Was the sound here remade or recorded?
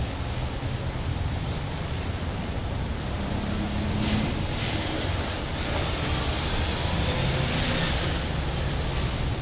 recorded